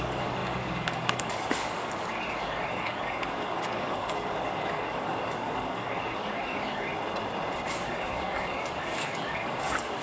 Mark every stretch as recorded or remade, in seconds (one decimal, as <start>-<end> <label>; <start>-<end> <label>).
0.0-6.9 remade; 6.9-7.7 recorded; 7.7-10.0 remade